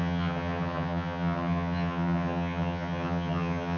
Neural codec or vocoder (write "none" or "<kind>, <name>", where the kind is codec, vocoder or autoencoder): vocoder, HiFi-GAN